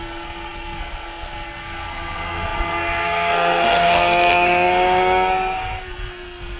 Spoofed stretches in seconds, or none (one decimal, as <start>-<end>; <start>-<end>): 0.0-6.6